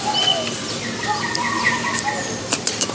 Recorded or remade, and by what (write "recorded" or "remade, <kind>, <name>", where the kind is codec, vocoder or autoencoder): recorded